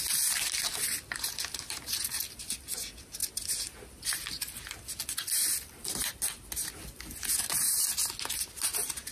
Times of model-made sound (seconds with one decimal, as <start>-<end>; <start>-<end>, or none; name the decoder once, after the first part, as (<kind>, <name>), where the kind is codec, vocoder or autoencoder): none